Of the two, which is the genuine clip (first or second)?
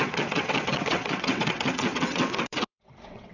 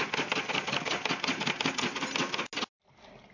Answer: second